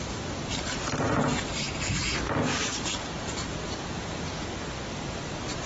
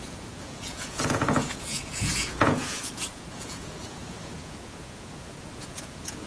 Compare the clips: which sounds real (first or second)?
first